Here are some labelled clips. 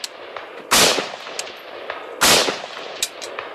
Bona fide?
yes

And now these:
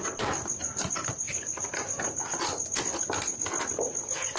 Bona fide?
yes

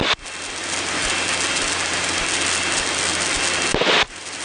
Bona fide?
yes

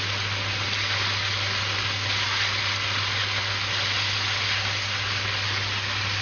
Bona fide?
yes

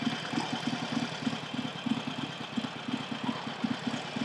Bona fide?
yes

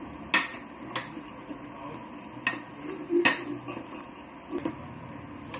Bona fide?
yes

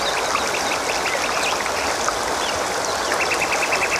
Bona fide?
yes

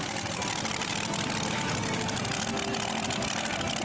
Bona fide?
yes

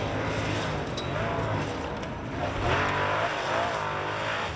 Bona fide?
yes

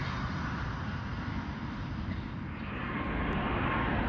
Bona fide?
yes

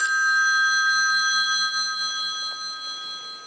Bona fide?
yes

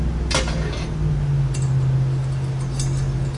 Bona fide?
yes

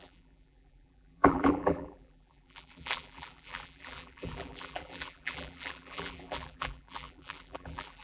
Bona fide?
no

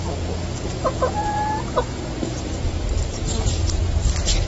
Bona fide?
yes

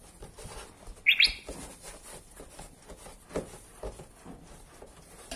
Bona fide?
yes